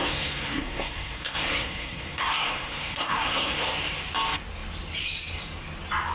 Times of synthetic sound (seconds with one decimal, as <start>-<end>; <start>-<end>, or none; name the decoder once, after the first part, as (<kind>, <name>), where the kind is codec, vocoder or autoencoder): 0.0-3.7 (codec, SNAC)